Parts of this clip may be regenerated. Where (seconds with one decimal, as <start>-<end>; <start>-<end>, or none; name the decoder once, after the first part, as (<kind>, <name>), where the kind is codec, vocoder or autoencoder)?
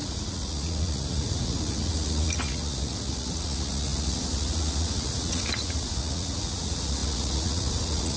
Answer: 0.0-8.2 (vocoder, Vocos)